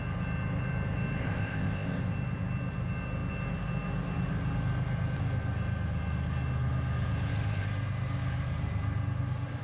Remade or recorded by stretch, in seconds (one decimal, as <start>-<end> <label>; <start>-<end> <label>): 0.0-1.2 recorded; 1.2-2.0 remade; 2.0-9.6 recorded